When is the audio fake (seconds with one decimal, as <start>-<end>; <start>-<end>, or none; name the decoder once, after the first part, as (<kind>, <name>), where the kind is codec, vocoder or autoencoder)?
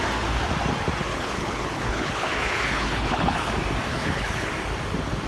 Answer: 1.1-3.5 (codec, HILCodec); 3.9-4.5